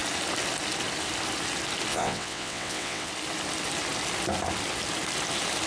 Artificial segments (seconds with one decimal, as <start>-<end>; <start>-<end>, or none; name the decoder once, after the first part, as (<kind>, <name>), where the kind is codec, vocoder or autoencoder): 1.9-3.1 (vocoder, WaveNeXt)